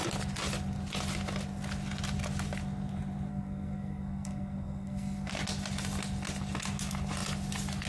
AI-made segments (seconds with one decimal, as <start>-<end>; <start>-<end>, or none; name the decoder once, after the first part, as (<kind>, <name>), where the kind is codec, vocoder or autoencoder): 3.3-5.3 (codec, SNAC)